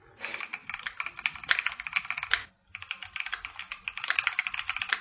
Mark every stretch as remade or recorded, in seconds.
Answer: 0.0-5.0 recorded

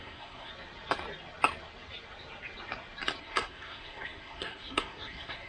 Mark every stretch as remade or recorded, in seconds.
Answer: 0.0-0.5 remade; 0.5-3.2 recorded; 3.2-5.5 remade

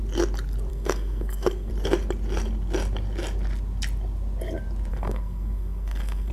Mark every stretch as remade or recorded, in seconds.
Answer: 0.0-0.7 recorded; 0.7-1.7 remade; 1.7-4.9 recorded; 4.9-6.3 remade

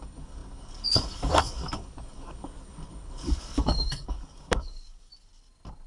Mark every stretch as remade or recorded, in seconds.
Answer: 0.0-5.1 remade; 5.1-5.9 recorded

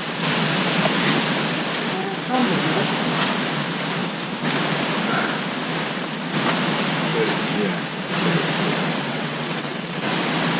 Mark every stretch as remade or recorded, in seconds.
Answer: 0.0-9.1 recorded; 9.1-10.1 remade; 10.1-10.6 recorded

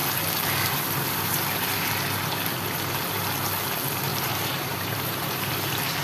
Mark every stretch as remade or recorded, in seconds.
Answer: 0.0-4.1 recorded; 4.1-5.5 remade; 5.5-6.0 recorded

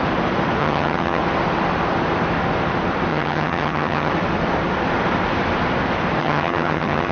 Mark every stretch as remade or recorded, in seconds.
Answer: 0.0-0.6 recorded; 0.6-1.2 remade; 1.2-3.1 recorded; 3.1-4.1 remade; 4.1-6.2 recorded; 6.2-7.1 remade

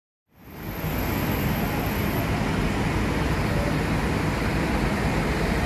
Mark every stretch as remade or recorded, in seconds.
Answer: 0.0-5.7 recorded